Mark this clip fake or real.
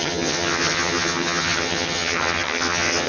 fake